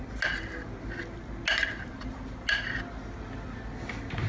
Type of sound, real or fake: real